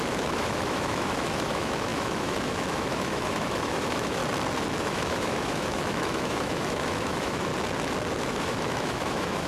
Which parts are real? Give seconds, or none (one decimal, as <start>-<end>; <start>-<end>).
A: 4.2-4.8; 7.5-8.2